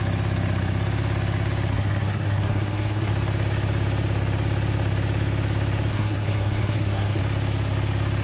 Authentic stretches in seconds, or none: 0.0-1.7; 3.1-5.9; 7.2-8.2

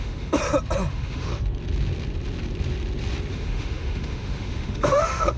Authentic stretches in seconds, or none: 0.4-0.9; 1.3-3.3

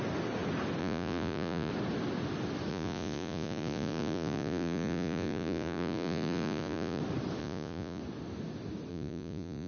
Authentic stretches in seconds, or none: 0.0-0.8; 1.7-2.7; 7.0-7.4; 8.0-8.9